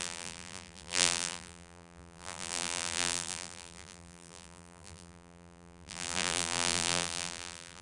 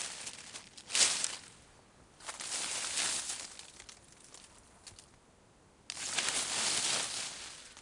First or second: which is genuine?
second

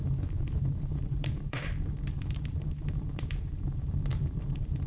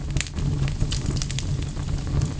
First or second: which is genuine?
second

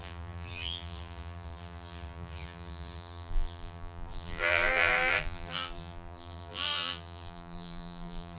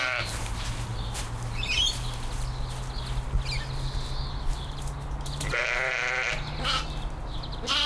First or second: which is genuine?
second